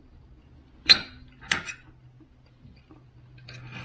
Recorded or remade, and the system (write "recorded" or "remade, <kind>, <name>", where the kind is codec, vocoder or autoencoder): recorded